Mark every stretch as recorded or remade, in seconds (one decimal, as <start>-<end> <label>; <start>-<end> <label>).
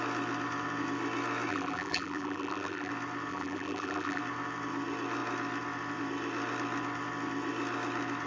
0.0-1.5 recorded; 1.5-2.9 remade; 2.9-3.3 recorded; 3.3-4.2 remade; 4.2-8.3 recorded